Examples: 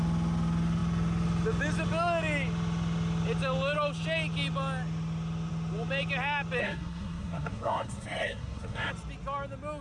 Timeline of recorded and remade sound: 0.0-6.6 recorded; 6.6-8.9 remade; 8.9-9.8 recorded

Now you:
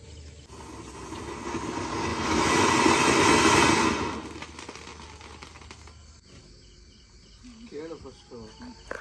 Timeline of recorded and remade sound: 0.0-2.1 recorded; 2.1-2.7 remade; 2.7-9.0 recorded

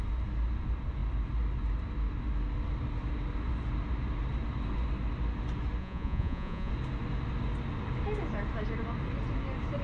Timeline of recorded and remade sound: 0.0-5.8 recorded; 5.8-6.7 remade; 6.7-9.8 recorded

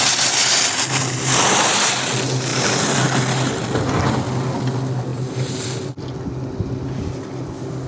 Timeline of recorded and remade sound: 0.0-7.9 recorded

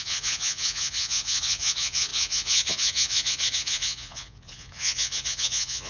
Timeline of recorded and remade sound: 0.0-5.9 remade

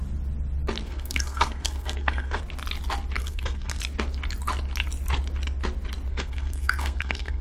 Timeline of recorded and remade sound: 0.0-0.8 recorded; 0.8-2.4 remade; 2.4-3.2 recorded; 3.2-3.8 remade; 3.8-6.1 recorded; 6.1-7.4 remade